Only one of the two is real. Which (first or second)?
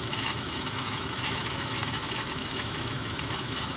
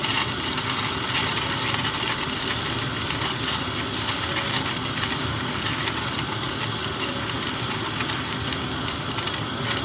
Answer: second